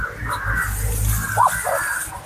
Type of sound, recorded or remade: recorded